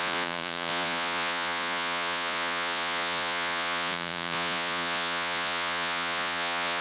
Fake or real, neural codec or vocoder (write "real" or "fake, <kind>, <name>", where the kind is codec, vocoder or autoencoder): fake, vocoder, Vocos